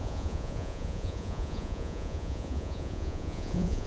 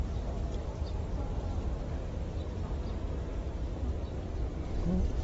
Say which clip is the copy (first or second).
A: first